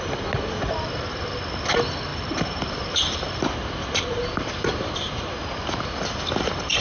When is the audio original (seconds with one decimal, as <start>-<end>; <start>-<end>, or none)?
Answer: 0.0-2.1; 6.2-6.8